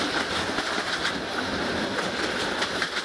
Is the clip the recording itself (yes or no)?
yes